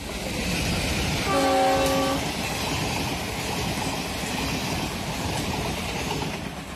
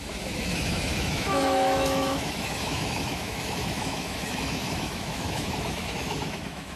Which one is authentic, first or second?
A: first